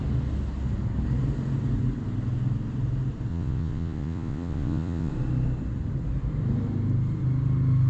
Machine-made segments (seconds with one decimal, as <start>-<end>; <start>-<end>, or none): 3.3-5.1